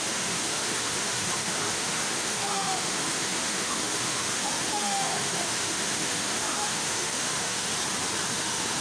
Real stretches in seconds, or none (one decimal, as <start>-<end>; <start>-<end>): 7.7-8.3